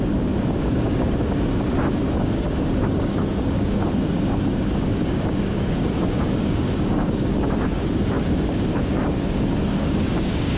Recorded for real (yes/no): no